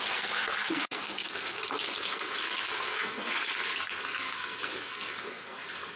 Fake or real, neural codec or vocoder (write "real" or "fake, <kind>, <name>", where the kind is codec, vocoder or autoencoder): fake, codec, SNAC